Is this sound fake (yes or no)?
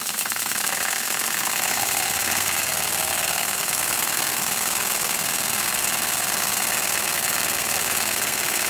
yes